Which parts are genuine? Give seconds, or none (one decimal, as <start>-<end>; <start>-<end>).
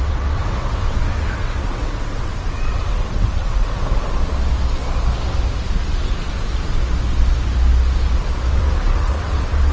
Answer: 3.8-8.5